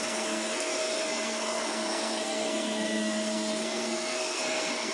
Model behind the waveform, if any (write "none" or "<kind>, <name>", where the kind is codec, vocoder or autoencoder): codec, SNAC